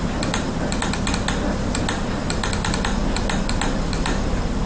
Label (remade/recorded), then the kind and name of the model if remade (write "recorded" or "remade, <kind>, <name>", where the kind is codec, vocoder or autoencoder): recorded